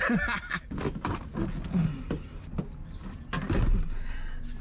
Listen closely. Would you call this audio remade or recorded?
recorded